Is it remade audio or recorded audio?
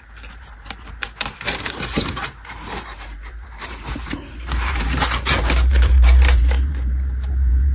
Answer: remade